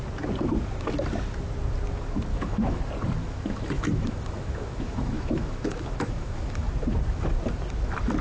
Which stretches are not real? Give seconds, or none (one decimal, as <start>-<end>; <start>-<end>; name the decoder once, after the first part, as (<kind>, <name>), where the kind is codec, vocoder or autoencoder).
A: 2.3-2.8 (autoencoder, DAC-VAE); 3.2-6.7